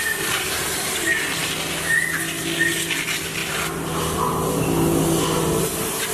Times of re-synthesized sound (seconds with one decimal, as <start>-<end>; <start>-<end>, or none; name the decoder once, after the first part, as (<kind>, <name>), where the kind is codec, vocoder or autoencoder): none